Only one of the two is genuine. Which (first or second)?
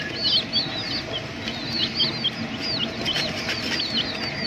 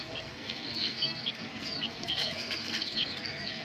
first